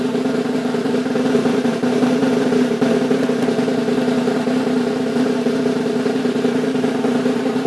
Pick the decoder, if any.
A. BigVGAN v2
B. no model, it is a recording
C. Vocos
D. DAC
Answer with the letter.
A